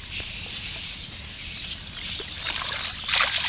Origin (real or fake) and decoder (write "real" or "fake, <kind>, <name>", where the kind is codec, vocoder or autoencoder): real